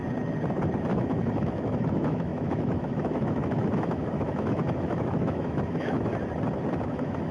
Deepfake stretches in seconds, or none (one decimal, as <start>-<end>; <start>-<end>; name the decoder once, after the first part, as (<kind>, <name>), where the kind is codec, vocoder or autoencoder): 0.8-6.1 (autoencoder, DAC-VAE); 6.8-7.3